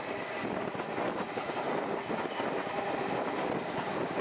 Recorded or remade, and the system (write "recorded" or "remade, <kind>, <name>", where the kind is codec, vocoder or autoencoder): recorded